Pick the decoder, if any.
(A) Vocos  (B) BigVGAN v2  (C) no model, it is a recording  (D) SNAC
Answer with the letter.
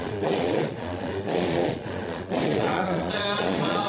A